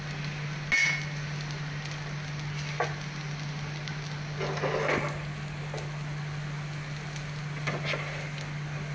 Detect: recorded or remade recorded